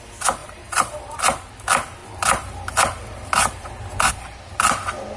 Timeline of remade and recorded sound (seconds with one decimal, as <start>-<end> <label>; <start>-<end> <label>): 0.0-0.4 recorded; 0.4-1.5 remade; 1.5-2.0 recorded; 2.0-4.1 remade; 4.1-5.2 recorded